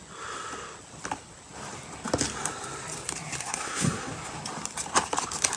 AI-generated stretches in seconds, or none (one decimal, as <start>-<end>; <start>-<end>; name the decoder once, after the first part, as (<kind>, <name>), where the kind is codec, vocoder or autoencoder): 3.4-4.1 (codec, SNAC)